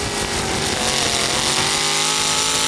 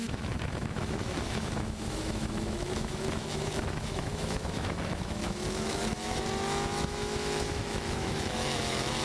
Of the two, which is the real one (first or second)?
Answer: first